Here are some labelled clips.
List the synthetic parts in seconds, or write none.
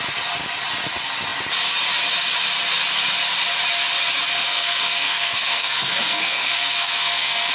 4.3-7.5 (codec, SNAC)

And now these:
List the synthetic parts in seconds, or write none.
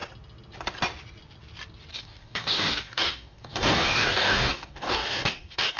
1.9-5.8 (codec, DAC)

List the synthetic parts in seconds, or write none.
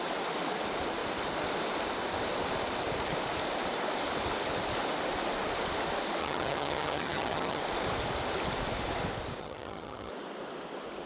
6.2-7.6 (vocoder, HiFi-GAN); 9.4-10.1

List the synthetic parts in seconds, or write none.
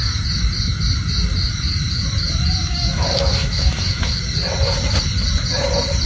2.6-4.1 (autoencoder, DAC-VAE)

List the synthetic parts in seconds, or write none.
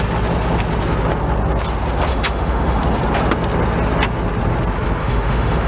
2.1-2.8 (autoencoder, DAC-VAE); 5.0-5.7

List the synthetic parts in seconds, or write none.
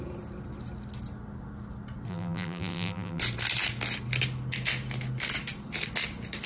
2.1-3.2 (vocoder, BigVGAN v2)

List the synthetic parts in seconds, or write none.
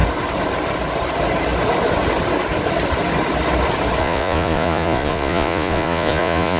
4.0-6.6 (vocoder, Vocos)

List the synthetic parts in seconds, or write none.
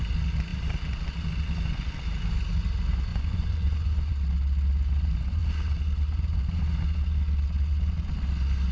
3.1-4.1 (vocoder, Vocos)